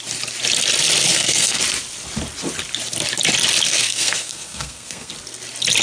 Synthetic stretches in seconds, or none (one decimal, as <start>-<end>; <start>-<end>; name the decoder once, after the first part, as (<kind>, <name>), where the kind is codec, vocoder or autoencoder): 1.1-1.6 (codec, SNAC); 3.7-5.1